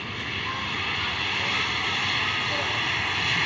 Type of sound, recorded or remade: recorded